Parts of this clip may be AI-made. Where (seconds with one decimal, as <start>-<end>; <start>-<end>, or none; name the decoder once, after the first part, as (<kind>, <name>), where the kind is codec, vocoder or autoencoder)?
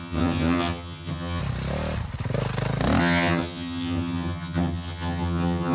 0.0-1.4 (vocoder, HiFi-GAN); 3.0-5.7